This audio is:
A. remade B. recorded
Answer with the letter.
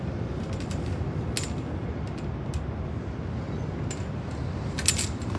B